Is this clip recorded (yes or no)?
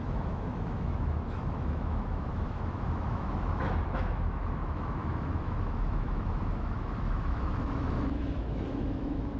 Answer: no